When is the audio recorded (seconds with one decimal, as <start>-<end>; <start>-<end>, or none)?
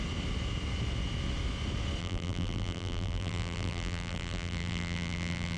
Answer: 0.0-2.0